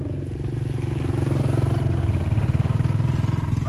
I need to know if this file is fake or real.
real